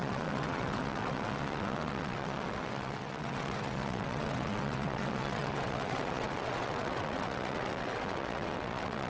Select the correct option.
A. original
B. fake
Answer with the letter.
B